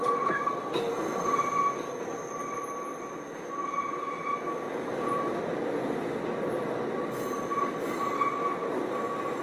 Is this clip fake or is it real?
real